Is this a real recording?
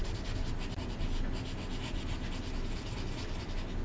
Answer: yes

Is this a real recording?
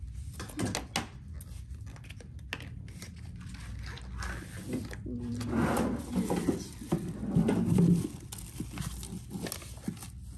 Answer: yes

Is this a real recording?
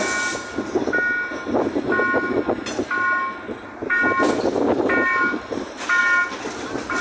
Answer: yes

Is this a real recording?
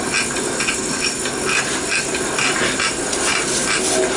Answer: yes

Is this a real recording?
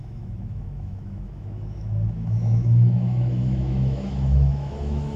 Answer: no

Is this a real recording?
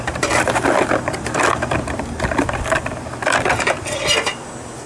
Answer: yes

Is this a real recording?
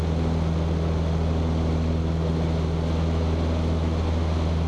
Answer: yes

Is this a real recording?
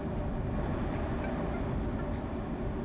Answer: yes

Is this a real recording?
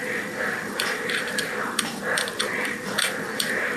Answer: no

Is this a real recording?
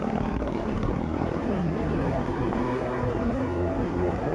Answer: no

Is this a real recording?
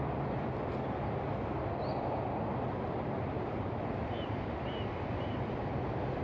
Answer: no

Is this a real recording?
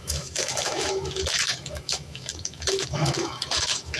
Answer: no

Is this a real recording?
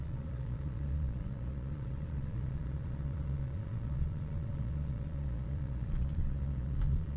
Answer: no